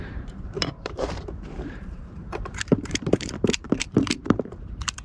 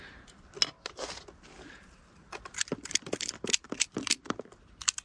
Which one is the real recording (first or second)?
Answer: second